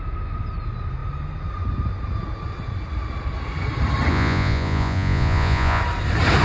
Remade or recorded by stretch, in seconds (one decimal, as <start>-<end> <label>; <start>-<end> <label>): 0.0-4.1 recorded; 4.1-5.8 remade; 5.8-6.4 recorded